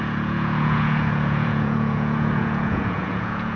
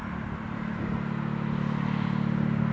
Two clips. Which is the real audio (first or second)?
second